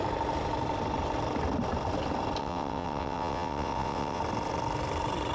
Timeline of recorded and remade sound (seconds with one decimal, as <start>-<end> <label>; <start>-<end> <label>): 0.0-2.4 recorded; 2.4-4.2 remade; 4.2-5.3 recorded